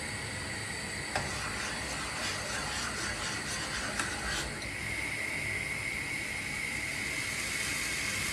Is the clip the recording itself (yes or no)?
yes